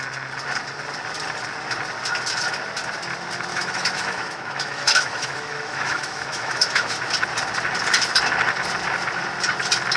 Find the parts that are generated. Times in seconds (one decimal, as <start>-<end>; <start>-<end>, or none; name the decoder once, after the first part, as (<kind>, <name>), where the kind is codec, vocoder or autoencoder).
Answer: 3.5-7.0 (autoencoder, DAC-VAE)